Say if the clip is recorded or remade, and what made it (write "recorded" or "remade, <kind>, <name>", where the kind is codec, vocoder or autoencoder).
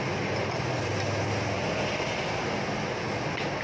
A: recorded